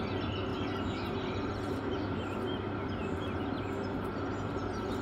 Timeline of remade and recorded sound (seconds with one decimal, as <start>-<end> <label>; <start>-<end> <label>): 0.0-0.5 recorded; 0.5-2.0 remade; 2.0-3.0 recorded; 3.0-4.6 remade; 4.6-5.0 recorded